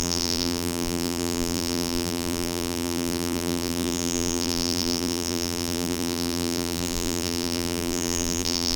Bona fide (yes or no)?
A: no